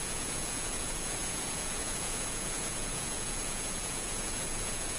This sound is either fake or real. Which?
fake